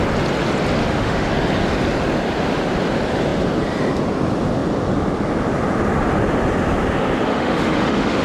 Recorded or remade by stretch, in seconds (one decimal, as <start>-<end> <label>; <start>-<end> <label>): 0.0-0.8 recorded; 0.8-1.3 remade; 1.3-7.3 recorded; 7.3-8.2 remade